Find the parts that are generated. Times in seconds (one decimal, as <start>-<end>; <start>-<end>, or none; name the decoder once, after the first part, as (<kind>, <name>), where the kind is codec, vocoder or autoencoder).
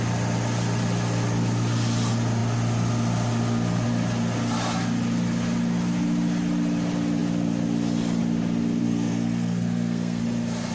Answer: 8.8-10.2 (codec, SNAC)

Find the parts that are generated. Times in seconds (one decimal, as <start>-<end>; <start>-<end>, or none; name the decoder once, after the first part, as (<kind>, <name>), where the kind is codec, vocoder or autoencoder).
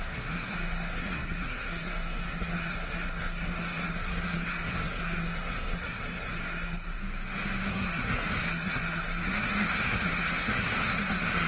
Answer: 0.0-7.0 (codec, SNAC); 7.7-11.5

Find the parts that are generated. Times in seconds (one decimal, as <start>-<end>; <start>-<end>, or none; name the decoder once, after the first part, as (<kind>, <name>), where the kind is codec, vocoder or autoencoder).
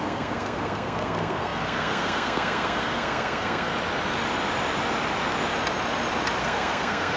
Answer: 0.0-3.7 (codec, SNAC); 6.4-7.2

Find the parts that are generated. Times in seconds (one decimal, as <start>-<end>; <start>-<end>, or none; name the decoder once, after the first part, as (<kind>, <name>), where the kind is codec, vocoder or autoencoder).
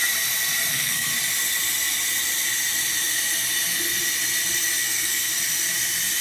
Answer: 0.7-1.1 (codec, SNAC); 4.8-5.3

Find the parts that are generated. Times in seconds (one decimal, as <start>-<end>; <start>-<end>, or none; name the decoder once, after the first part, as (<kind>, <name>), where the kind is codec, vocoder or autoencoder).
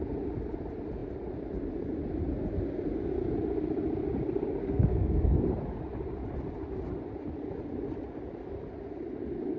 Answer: 4.6-5.4 (codec, SNAC)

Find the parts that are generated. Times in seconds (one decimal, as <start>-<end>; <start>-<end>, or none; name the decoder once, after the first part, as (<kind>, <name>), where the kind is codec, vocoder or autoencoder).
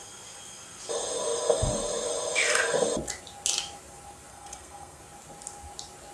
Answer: 4.3-5.0 (codec, SNAC)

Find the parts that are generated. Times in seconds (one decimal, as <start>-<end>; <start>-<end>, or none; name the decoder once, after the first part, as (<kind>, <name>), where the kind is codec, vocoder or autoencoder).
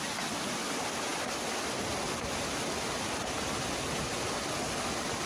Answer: none